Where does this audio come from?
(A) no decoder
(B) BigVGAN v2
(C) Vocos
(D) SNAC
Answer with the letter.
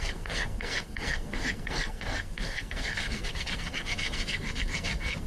D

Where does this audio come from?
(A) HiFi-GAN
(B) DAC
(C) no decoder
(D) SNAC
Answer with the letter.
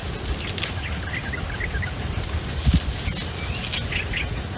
C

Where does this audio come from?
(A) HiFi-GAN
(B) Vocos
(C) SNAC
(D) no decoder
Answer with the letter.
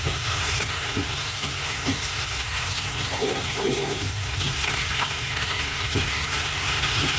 C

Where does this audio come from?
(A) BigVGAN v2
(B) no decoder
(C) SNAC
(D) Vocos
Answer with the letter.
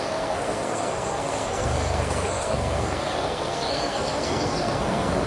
C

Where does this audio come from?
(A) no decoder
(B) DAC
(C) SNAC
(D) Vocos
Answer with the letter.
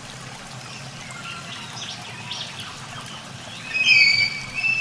A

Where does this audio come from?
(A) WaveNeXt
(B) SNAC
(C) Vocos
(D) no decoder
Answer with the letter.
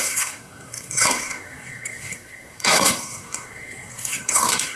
B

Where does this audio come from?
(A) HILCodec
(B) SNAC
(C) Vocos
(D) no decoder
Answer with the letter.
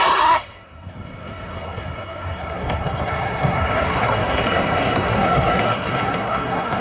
B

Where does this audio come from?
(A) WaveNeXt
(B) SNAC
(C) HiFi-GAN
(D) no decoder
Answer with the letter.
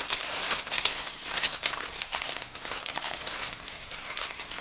B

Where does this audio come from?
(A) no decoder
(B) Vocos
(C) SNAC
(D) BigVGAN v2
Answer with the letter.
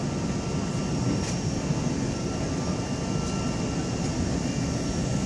A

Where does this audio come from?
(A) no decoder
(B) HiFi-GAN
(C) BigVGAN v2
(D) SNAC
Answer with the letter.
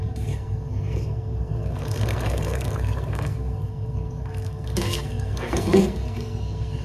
D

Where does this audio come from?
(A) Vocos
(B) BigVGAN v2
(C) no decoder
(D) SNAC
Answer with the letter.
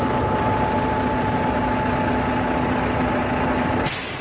C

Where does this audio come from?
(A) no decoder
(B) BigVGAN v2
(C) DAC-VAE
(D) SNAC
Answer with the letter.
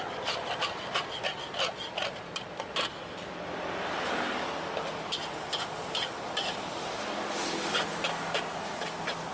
A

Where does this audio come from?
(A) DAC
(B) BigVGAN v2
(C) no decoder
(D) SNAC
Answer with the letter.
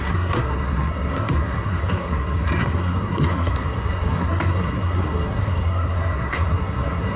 D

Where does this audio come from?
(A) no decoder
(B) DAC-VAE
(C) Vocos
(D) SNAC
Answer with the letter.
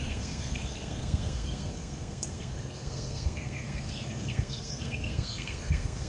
D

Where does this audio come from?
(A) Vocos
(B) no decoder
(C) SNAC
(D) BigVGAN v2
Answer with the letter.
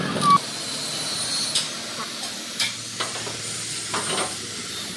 B